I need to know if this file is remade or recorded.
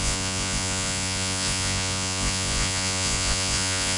remade